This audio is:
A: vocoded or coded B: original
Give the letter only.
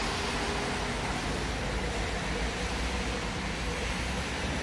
B